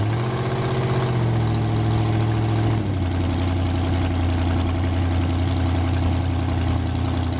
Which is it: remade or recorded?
recorded